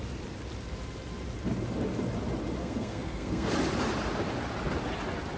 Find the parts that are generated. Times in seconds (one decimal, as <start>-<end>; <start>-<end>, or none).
2.6-3.5